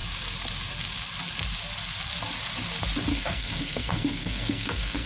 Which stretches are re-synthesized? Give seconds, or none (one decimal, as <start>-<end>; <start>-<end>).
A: 3.1-5.1

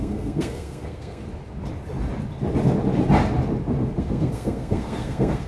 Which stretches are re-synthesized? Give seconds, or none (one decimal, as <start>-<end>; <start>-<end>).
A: 0.0-1.2; 4.0-5.5

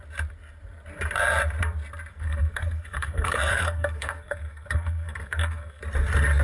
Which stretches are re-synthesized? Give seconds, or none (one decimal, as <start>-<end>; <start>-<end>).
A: 2.1-5.8

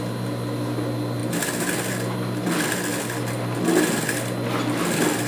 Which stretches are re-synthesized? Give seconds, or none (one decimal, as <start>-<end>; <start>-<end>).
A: none